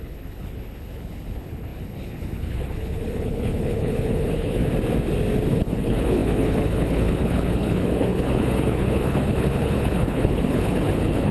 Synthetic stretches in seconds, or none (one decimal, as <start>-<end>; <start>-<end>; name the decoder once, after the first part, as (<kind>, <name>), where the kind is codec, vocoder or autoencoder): 0.0-4.6 (codec, HILCodec); 5.5-11.3